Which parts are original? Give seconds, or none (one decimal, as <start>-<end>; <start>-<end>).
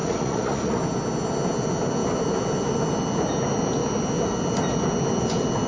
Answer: 0.8-5.7